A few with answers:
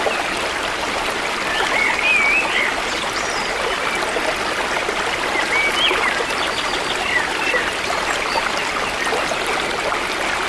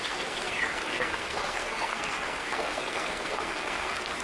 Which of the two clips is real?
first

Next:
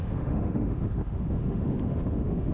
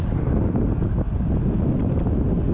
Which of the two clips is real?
second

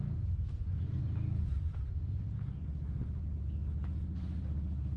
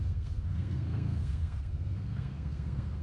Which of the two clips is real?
first